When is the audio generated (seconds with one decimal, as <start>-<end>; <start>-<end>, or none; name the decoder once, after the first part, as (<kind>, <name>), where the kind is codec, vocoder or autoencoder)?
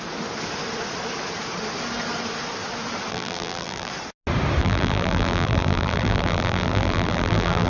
3.1-3.9 (vocoder, BigVGAN v2); 4.6-7.7